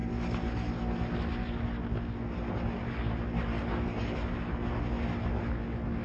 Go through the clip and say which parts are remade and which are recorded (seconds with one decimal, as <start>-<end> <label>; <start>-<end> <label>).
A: 0.0-6.0 recorded